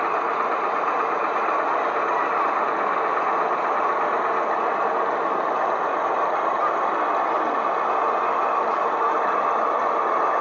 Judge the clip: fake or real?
real